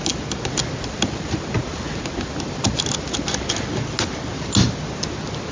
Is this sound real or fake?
real